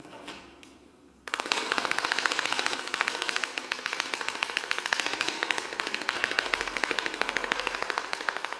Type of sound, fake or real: fake